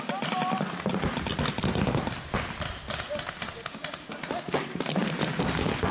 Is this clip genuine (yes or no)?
yes